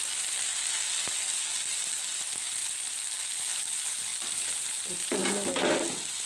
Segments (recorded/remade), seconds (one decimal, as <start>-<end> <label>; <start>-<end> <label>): 0.0-6.3 recorded